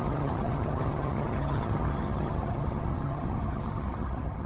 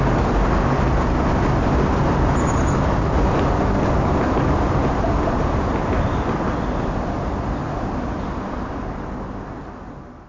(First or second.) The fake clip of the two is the first